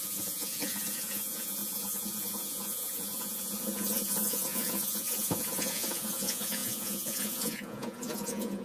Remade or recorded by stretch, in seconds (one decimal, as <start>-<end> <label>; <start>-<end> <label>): 0.0-8.6 remade